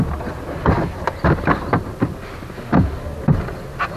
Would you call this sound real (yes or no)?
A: yes